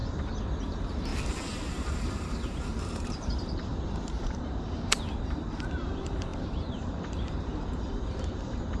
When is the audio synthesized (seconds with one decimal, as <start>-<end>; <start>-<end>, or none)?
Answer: 0.6-1.1; 1.7-8.8